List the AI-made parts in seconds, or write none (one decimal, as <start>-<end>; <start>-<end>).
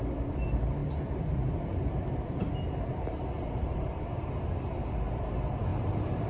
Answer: 0.8-2.5; 5.7-6.3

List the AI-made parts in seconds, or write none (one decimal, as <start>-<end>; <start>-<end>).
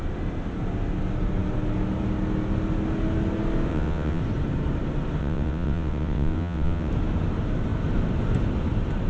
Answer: 3.7-4.2; 5.2-6.9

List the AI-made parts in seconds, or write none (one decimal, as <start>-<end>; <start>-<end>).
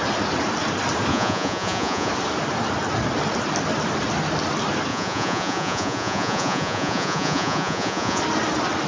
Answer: 1.1-2.1; 4.9-8.2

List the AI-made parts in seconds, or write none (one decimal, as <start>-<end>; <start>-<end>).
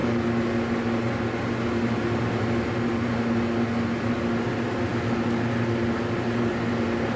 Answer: none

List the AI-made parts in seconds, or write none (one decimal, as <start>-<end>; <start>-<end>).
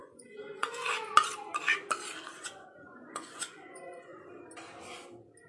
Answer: 0.0-0.7; 2.3-4.2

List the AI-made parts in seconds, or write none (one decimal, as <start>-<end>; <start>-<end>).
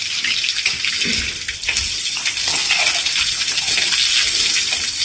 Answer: none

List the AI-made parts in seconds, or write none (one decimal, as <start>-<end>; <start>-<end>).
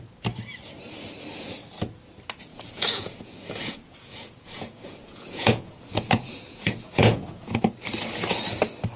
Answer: 2.5-7.6